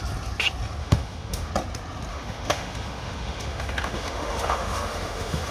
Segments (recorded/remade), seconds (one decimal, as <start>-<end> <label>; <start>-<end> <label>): 0.0-0.8 recorded; 0.8-1.5 remade; 1.5-2.1 recorded; 2.1-5.5 remade